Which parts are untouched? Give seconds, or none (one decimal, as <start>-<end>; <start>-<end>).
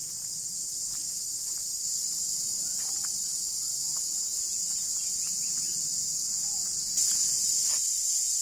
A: 0.0-4.3; 7.5-8.4